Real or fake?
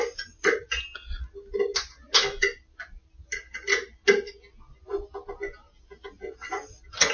real